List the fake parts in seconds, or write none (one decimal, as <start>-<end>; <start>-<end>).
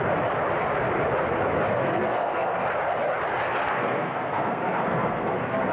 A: 1.8-2.6; 3.6-5.7